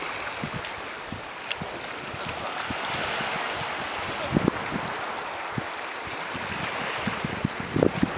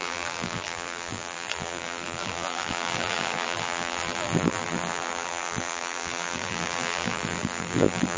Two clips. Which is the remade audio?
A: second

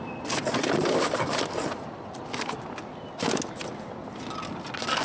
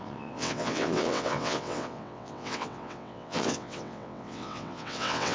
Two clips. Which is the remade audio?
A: second